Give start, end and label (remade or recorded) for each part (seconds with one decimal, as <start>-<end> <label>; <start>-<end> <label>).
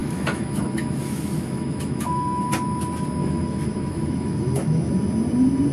0.0-2.4 remade; 2.4-3.2 recorded; 3.2-4.9 remade; 4.9-5.7 recorded